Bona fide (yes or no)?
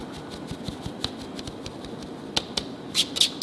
yes